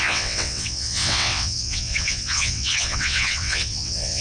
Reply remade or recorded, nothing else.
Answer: remade